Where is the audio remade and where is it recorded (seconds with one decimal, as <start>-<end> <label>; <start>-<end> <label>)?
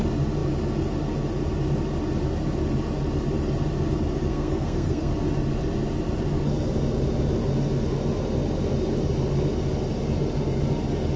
0.0-4.3 recorded; 4.3-5.1 remade; 5.1-11.2 recorded